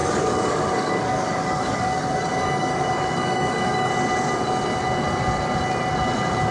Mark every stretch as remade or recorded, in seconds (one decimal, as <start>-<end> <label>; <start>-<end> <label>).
0.0-3.9 remade; 3.9-6.5 recorded